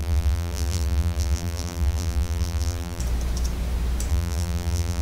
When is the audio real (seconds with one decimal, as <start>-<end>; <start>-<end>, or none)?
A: 3.0-4.1